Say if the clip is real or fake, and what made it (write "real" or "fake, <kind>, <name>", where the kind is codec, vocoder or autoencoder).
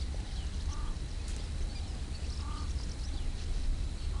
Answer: real